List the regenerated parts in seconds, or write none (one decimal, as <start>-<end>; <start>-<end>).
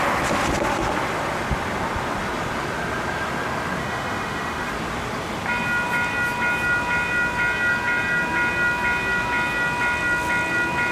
3.8-4.7